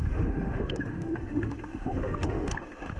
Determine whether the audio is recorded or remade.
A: remade